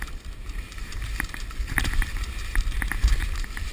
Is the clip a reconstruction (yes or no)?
yes